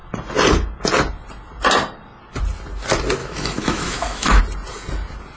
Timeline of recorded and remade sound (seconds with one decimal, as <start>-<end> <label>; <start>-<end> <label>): 0.0-3.2 recorded; 3.2-4.4 remade; 4.4-5.4 recorded